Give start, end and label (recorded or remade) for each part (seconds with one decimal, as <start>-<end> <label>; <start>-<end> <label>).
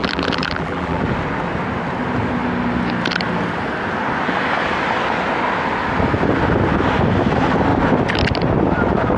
0.0-1.0 remade; 1.0-9.2 recorded